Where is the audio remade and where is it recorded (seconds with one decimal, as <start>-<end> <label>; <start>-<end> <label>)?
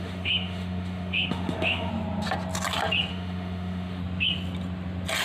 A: 0.0-1.9 remade; 1.9-3.1 recorded; 3.1-4.0 remade; 4.0-5.2 recorded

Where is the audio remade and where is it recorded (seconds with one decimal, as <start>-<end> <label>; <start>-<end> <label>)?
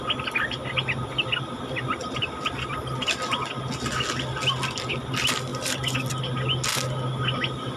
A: 0.0-7.8 recorded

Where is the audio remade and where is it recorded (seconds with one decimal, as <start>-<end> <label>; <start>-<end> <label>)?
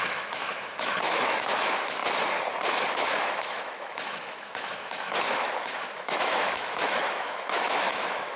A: 0.0-2.0 remade; 2.0-2.9 recorded; 2.9-8.4 remade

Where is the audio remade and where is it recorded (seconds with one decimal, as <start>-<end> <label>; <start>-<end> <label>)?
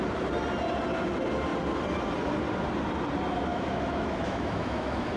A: 0.0-3.5 recorded; 3.5-5.2 remade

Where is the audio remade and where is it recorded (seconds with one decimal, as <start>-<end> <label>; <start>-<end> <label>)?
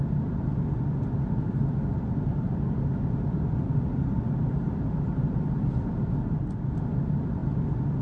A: 0.0-8.0 recorded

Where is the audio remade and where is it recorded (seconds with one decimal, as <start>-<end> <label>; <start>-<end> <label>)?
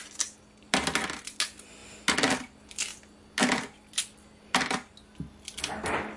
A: 0.0-6.2 recorded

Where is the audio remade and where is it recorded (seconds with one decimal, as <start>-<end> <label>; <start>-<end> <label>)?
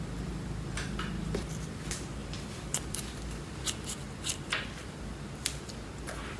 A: 0.0-6.4 recorded